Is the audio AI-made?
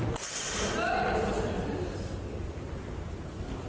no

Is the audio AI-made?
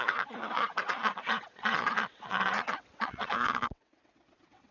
yes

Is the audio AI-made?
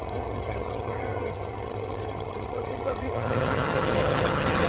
yes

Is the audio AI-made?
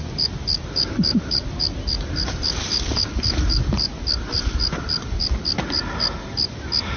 no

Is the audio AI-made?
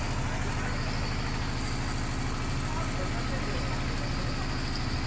no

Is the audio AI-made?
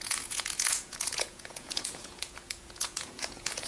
yes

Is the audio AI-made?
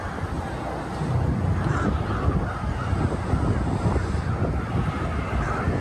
no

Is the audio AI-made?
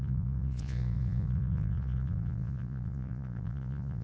yes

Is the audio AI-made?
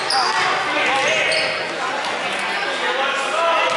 no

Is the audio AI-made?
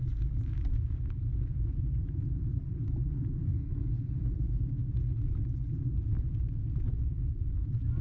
yes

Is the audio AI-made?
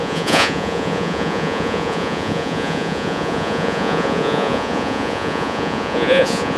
yes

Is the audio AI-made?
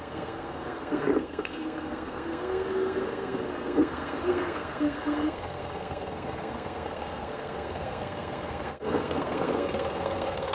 yes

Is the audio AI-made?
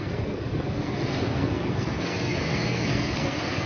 yes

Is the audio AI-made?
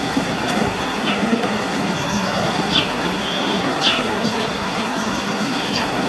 yes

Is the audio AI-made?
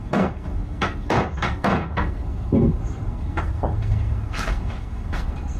yes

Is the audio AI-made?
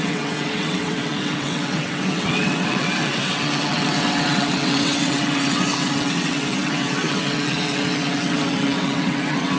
yes